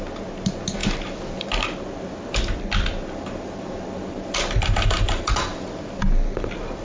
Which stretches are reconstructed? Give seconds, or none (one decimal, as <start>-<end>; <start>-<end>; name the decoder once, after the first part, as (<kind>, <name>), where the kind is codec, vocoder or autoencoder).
none